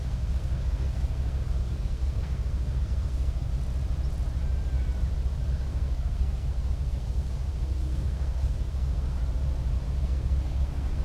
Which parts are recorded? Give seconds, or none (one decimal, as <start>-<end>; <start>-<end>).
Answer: 3.5-5.5; 9.2-10.0